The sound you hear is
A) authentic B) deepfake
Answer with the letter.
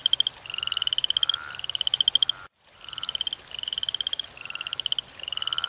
A